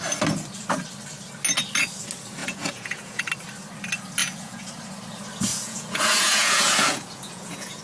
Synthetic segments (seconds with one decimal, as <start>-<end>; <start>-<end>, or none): 2.4-3.3; 4.2-4.7; 5.5-7.8